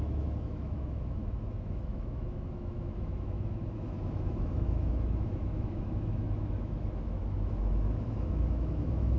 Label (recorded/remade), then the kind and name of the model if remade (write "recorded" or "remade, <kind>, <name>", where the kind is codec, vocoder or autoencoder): remade, autoencoder, DAC-VAE